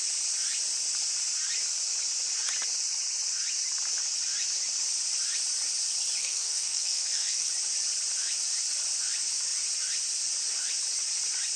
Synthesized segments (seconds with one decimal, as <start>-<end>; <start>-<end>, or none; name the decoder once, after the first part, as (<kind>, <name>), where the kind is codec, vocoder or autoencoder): 6.2-7.5 (codec, SNAC)